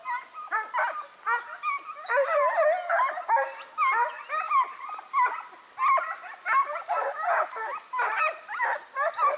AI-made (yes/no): no